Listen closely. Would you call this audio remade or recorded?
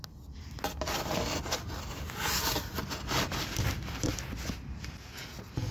recorded